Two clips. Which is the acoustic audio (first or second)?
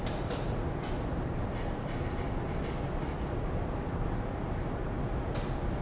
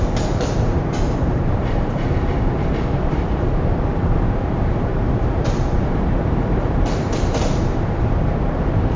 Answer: first